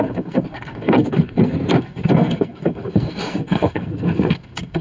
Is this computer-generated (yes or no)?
yes